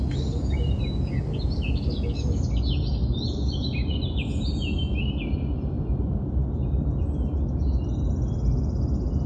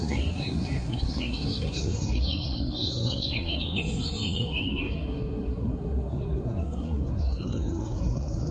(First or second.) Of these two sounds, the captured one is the first